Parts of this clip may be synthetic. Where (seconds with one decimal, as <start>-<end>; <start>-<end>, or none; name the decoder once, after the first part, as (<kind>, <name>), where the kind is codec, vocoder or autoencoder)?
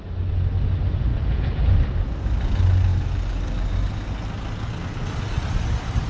1.1-1.6 (vocoder, Vocos)